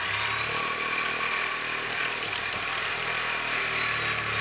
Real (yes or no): yes